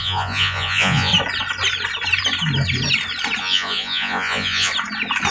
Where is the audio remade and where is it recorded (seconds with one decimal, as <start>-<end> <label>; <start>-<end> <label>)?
0.0-1.1 remade; 1.1-3.4 recorded; 3.4-4.7 remade; 4.7-5.3 recorded